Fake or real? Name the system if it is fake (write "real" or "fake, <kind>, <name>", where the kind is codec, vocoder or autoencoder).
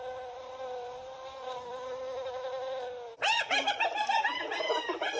real